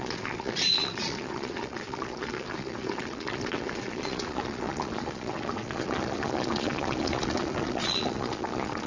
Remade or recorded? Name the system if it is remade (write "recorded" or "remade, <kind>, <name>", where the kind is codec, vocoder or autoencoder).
remade, vocoder, Vocos